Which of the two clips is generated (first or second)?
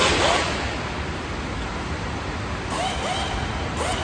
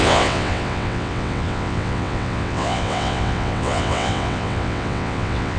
second